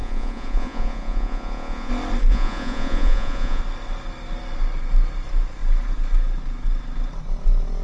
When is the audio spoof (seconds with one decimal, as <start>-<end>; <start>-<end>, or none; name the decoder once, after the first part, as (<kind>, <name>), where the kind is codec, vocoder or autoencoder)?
0.0-1.9 (vocoder, Vocos); 2.3-3.6